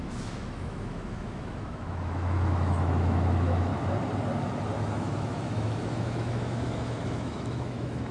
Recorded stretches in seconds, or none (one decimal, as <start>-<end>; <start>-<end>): 3.7-4.8